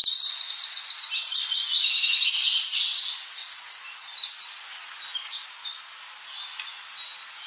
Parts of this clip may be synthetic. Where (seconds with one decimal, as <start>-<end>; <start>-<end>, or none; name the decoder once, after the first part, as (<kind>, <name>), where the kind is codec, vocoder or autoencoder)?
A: none